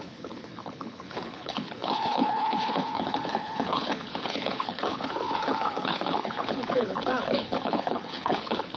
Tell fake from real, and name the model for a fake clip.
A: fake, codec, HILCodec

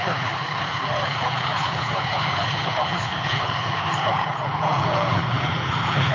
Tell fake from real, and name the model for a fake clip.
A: fake, codec, HILCodec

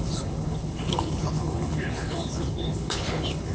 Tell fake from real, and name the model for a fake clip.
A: fake, codec, HILCodec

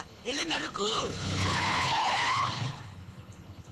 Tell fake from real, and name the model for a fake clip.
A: fake, codec, HILCodec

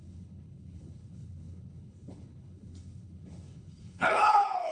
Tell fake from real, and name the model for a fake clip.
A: fake, codec, HILCodec